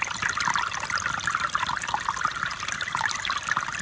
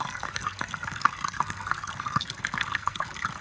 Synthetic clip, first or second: second